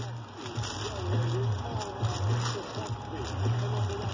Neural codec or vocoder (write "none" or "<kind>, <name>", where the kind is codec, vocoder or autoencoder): none